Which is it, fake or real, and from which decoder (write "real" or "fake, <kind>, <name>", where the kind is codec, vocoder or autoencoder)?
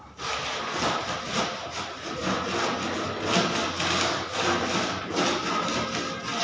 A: real